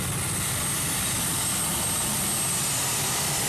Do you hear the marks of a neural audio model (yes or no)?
no